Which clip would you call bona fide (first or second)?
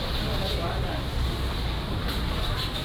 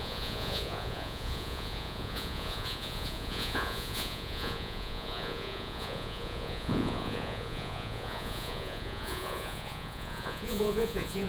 first